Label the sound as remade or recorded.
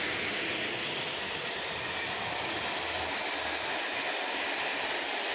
recorded